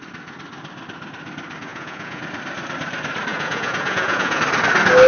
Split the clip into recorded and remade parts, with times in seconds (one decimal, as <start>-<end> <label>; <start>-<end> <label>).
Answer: 0.0-1.7 recorded; 1.7-2.2 remade; 2.2-3.3 recorded; 3.3-4.4 remade; 4.4-5.1 recorded